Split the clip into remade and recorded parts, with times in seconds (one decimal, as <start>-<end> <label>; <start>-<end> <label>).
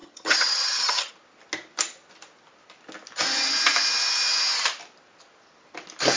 0.0-1.1 remade; 1.1-6.2 recorded